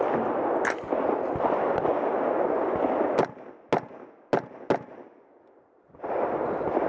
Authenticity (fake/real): real